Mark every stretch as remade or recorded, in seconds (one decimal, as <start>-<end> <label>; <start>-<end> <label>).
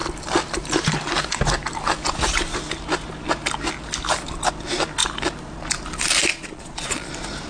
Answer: 0.0-6.3 recorded; 6.3-7.1 remade; 7.1-7.5 recorded